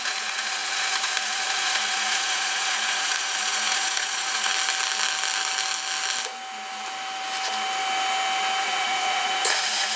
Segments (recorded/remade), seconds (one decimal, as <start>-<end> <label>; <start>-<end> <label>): 0.0-4.5 remade; 4.5-8.6 recorded; 8.6-10.0 remade